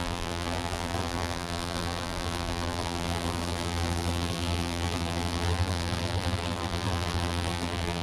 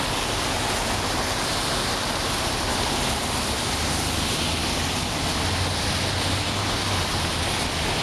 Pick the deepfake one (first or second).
first